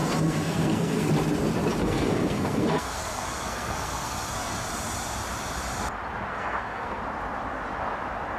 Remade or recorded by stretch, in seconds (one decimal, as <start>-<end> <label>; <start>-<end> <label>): 0.0-1.1 remade; 1.1-1.8 recorded; 1.8-4.5 remade; 4.5-6.3 recorded; 6.3-7.0 remade; 7.0-8.4 recorded